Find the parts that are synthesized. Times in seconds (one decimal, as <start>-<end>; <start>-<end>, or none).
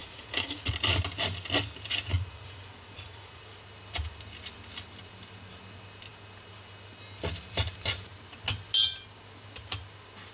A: 0.0-0.7; 2.1-3.4